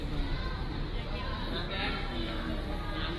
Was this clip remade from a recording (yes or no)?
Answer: no